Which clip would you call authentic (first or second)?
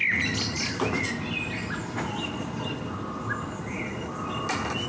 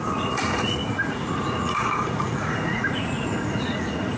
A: first